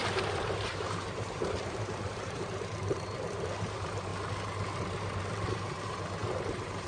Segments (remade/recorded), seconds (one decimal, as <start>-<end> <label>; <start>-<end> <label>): 0.0-4.1 remade; 4.1-4.8 recorded; 4.8-6.9 remade